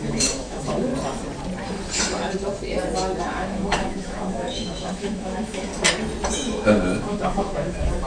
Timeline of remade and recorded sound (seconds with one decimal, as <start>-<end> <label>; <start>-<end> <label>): 0.0-0.9 remade; 0.9-3.2 recorded; 3.2-5.7 remade; 5.7-6.3 recorded; 6.3-8.1 remade